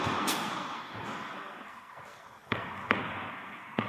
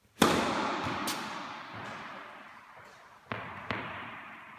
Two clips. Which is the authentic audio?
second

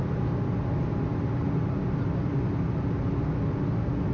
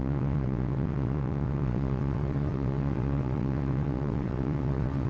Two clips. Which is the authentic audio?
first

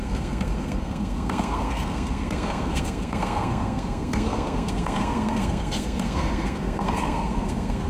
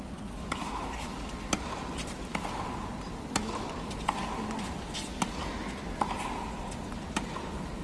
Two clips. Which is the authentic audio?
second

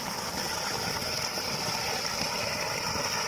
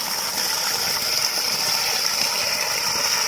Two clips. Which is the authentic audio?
second